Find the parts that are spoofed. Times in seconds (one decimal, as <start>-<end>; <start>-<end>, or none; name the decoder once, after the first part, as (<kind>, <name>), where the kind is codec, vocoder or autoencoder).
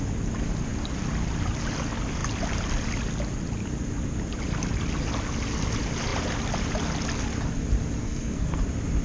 8.0-8.6 (codec, SNAC)